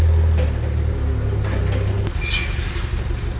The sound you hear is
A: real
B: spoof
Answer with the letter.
A